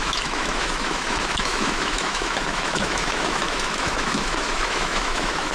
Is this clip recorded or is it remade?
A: remade